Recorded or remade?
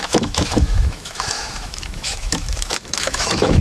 remade